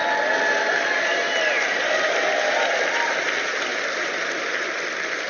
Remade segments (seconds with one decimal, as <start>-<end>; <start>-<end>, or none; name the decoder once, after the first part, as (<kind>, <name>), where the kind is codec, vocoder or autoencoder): none